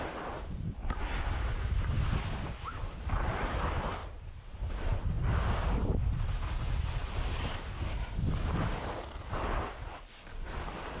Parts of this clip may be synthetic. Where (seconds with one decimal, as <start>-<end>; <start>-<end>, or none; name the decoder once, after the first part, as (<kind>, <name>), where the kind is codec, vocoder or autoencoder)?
4.0-4.5 (vocoder, BigVGAN v2)

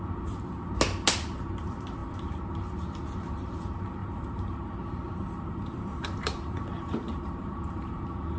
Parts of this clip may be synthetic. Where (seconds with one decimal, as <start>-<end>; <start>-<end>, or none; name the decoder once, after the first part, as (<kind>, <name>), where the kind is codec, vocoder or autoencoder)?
4.0-8.4 (vocoder, BigVGAN v2)

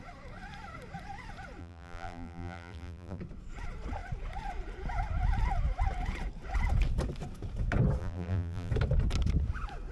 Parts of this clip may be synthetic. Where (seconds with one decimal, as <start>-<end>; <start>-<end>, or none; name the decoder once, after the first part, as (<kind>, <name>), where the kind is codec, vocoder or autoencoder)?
1.6-3.2 (vocoder, BigVGAN v2); 8.0-8.7

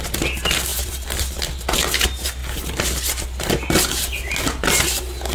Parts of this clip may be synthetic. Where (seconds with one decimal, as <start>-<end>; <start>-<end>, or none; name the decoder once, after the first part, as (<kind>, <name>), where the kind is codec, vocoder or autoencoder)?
0.7-1.5 (vocoder, BigVGAN v2)